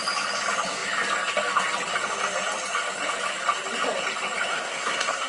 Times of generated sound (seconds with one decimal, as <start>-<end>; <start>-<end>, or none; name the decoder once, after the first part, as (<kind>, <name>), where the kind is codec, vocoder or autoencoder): 4.5-5.3 (codec, SNAC)

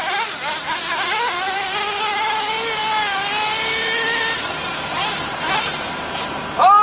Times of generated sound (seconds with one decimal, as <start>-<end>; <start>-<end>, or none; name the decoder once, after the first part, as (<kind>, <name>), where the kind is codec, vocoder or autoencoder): none

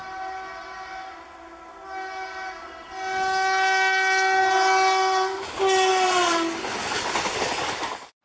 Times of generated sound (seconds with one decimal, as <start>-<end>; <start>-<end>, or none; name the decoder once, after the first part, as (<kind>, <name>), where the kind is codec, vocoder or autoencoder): none

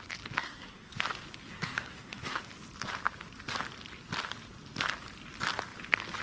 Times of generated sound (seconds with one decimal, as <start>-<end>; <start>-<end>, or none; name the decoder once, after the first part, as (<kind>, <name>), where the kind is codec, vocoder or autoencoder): 0.4-0.9 (codec, SNAC); 1.5-2.4